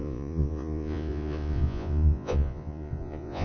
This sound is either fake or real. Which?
fake